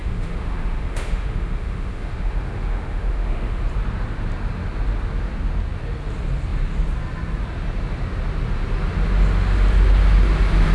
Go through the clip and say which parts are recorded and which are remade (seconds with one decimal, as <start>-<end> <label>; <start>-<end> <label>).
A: 0.0-3.6 remade; 3.6-10.7 recorded

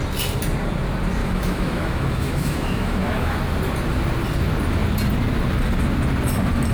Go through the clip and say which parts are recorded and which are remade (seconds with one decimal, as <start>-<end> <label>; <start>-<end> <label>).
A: 0.0-1.2 recorded; 1.2-3.3 remade; 3.3-6.7 recorded